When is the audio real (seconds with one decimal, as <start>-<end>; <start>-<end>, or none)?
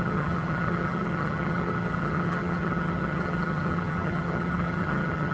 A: none